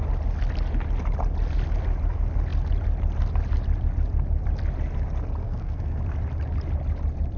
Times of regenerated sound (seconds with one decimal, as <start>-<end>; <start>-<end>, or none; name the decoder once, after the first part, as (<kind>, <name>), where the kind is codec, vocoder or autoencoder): 5.4-6.0 (codec, SNAC)